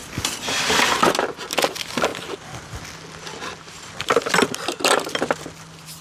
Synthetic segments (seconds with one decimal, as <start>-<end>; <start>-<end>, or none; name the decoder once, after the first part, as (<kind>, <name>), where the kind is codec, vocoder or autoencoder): none